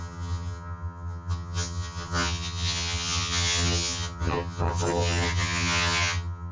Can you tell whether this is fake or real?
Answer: fake